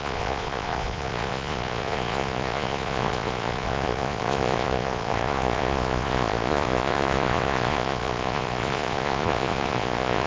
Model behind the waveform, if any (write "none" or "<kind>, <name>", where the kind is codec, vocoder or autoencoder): vocoder, Vocos